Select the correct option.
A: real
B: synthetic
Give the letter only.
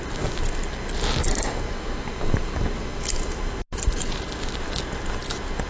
A